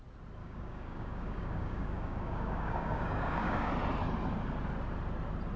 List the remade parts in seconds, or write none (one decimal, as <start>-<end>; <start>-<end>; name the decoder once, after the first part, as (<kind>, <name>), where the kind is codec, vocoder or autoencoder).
0.4-3.7 (codec, DAC)